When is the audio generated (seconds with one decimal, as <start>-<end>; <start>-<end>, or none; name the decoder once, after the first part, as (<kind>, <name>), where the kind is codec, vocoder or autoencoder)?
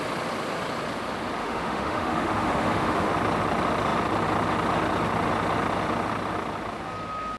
1.4-3.1 (autoencoder, DAC-VAE)